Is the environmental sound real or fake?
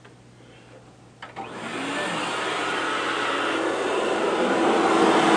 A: real